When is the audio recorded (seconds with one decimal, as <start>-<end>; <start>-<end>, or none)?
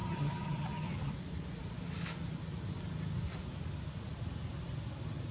1.1-5.3